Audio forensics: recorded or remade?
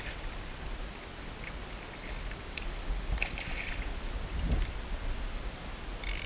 recorded